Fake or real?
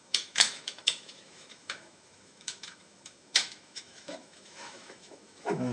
fake